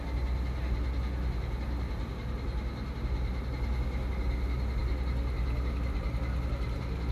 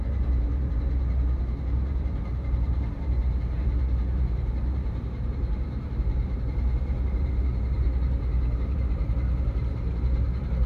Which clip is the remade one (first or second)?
second